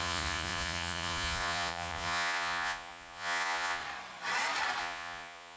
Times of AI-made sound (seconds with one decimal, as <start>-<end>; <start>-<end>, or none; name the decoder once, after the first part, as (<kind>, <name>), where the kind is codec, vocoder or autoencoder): 0.0-3.8 (vocoder, Vocos); 4.8-5.6